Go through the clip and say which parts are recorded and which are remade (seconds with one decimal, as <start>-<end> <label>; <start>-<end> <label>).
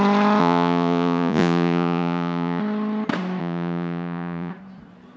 0.0-0.4 recorded; 0.4-2.6 remade; 2.6-3.4 recorded; 3.4-4.5 remade; 4.5-5.2 recorded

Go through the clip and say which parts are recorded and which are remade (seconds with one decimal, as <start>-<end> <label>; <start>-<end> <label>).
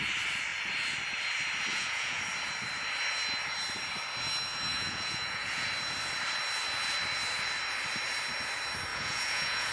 0.0-1.7 recorded; 1.7-2.2 remade; 2.2-4.7 recorded; 4.7-5.7 remade; 5.7-8.9 recorded; 8.9-9.7 remade